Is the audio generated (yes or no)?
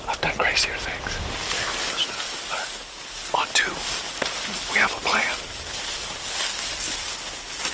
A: no